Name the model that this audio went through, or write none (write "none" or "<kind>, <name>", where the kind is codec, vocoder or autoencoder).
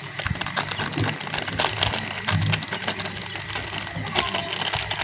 none